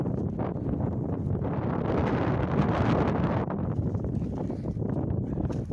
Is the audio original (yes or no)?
yes